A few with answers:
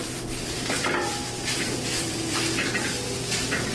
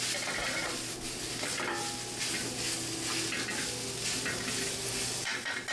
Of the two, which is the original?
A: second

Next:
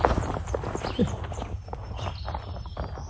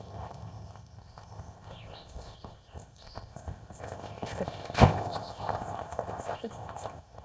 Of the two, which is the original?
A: first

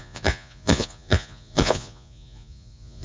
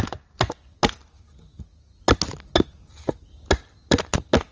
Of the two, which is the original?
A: second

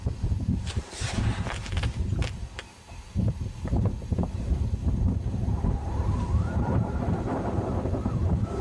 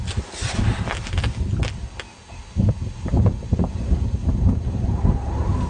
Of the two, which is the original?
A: second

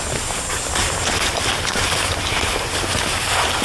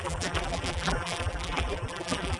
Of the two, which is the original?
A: first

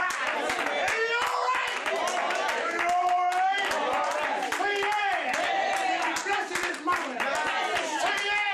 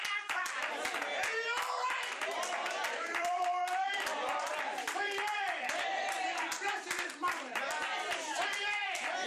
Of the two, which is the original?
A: first